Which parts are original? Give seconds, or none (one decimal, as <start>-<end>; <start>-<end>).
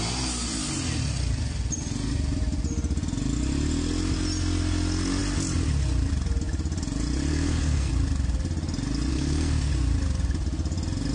0.0-7.3; 7.9-9.1; 9.7-11.1